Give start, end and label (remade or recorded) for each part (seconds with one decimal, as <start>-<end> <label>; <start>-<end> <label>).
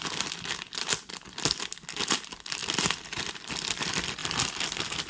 0.0-5.1 recorded